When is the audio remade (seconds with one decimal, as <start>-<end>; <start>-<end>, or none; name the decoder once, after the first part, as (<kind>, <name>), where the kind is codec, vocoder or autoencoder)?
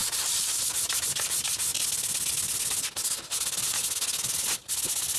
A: 0.0-0.6 (vocoder, BigVGAN v2)